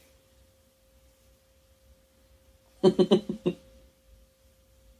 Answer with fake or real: real